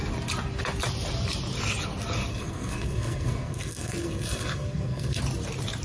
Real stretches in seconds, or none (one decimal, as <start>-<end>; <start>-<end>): 0.0-2.3; 5.2-5.8